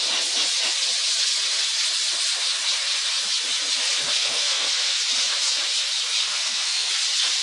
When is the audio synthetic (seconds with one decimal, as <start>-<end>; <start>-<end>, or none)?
4.1-5.0; 6.2-6.9